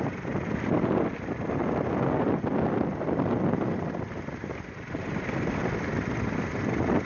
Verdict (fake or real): real